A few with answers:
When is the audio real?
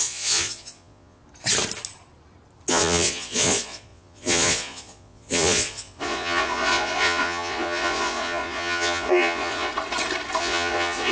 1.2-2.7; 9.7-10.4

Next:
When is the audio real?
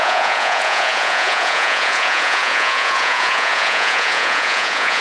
none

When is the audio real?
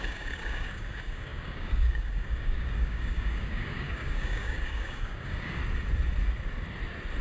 5.6-7.2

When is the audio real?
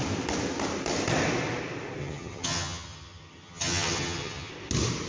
0.0-2.0; 4.5-5.1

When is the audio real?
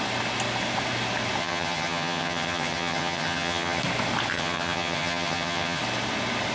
0.0-1.4; 3.8-4.3; 5.8-6.5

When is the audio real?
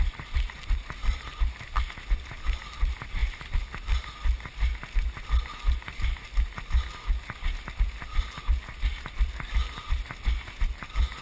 0.0-11.2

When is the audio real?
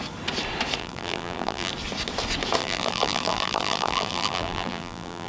0.0-0.8; 1.7-2.6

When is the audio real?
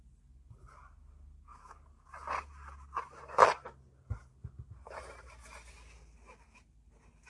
0.0-7.3